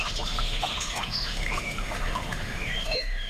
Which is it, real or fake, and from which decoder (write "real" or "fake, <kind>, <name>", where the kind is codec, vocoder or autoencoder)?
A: fake, autoencoder, DAC-VAE